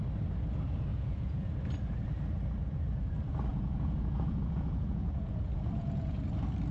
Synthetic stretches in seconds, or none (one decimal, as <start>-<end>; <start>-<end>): 0.9-1.5; 3.5-6.2